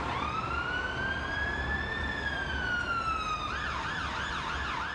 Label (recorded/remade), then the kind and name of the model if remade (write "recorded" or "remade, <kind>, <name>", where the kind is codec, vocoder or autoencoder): recorded